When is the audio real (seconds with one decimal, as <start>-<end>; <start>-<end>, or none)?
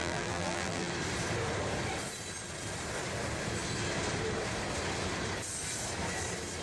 0.9-6.6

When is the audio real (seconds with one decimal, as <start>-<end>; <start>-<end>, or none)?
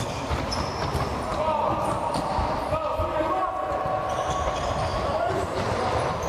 0.0-1.3; 3.3-4.9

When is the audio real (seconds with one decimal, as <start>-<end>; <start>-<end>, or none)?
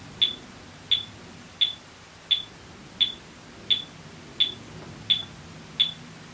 0.0-6.3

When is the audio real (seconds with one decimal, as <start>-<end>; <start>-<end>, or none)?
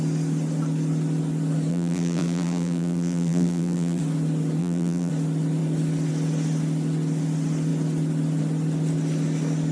0.0-1.7; 4.0-4.6; 5.1-9.7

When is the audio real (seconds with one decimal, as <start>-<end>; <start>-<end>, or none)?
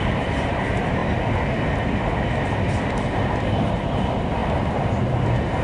1.0-2.1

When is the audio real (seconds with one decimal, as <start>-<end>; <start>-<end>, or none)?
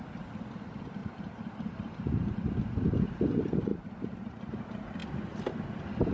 0.0-1.0; 2.3-3.7; 4.5-6.1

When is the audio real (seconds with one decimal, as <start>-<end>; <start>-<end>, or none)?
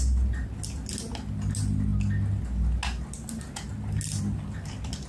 0.0-5.1